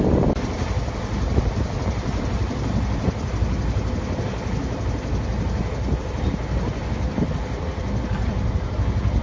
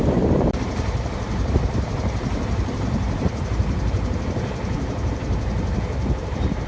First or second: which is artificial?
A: second